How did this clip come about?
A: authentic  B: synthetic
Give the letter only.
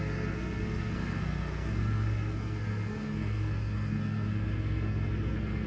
B